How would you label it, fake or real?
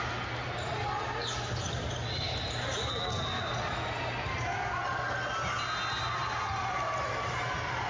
real